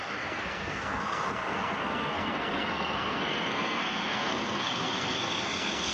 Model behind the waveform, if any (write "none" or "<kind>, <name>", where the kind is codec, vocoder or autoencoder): codec, SNAC